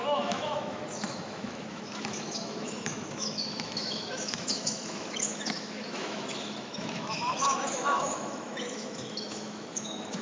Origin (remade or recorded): remade